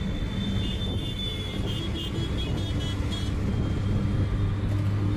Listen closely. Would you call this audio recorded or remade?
recorded